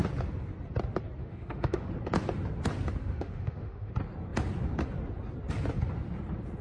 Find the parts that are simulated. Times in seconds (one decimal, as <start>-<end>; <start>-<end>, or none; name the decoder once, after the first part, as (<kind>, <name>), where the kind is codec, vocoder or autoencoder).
1.2-1.9 (autoencoder, DAC-VAE); 3.0-3.9